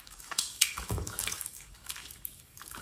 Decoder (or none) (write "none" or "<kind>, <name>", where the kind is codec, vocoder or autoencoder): codec, DAC